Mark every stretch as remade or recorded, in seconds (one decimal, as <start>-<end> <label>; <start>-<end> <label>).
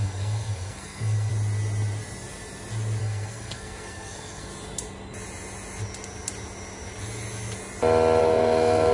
0.0-1.3 remade; 1.3-3.0 recorded; 3.0-4.5 remade; 4.5-8.2 recorded; 8.2-8.9 remade